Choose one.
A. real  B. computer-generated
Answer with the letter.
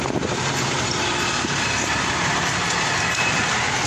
A